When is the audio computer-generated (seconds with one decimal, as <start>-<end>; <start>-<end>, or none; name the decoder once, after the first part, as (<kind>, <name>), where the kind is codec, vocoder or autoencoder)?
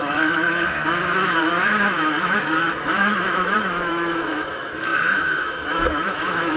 0.0-6.6 (autoencoder, DAC-VAE)